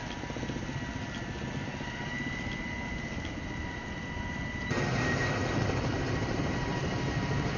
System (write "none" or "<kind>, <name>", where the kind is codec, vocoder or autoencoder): none